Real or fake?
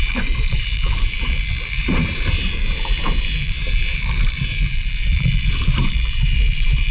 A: fake